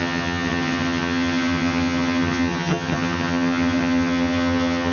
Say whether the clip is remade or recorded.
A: remade